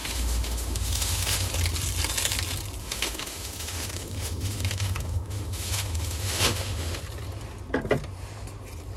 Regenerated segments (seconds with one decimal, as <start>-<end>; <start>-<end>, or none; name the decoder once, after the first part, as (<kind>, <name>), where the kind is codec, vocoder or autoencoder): 0.0-1.5 (autoencoder, DAC-VAE); 2.8-7.0